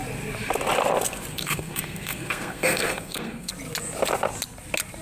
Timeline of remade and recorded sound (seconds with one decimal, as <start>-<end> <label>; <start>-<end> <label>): 0.0-1.3 recorded; 1.3-3.5 remade; 3.5-5.0 recorded